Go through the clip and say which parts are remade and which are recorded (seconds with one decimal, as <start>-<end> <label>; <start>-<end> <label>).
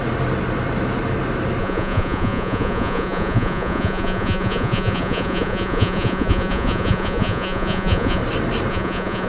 0.0-1.6 recorded; 1.6-8.2 remade; 8.2-8.7 recorded; 8.7-9.3 remade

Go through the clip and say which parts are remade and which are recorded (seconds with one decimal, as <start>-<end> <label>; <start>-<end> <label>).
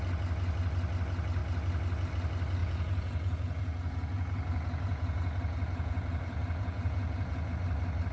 0.0-2.6 recorded; 2.6-7.5 remade; 7.5-8.1 recorded